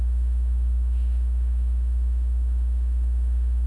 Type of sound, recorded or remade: remade